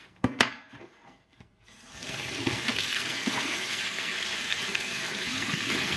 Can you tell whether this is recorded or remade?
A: remade